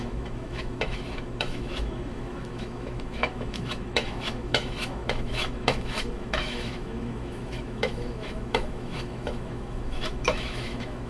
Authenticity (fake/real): fake